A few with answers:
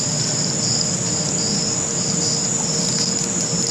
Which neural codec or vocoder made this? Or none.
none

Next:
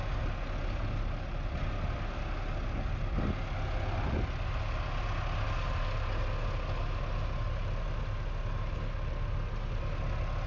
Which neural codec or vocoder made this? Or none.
none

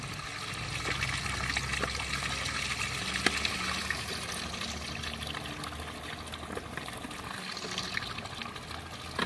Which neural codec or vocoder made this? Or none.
none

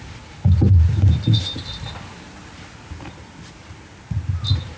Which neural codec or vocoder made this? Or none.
none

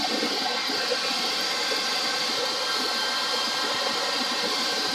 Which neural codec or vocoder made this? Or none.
none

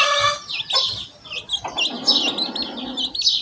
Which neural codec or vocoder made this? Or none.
none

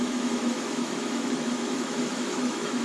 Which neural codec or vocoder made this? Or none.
autoencoder, DAC-VAE